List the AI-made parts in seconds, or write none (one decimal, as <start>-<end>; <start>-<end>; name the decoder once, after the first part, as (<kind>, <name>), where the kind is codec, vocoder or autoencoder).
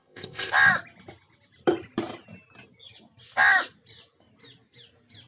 0.0-0.5 (codec, ZipCodec)